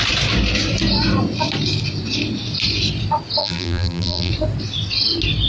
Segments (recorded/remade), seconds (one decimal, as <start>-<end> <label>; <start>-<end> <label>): 0.0-3.4 recorded; 3.4-4.3 remade; 4.3-5.5 recorded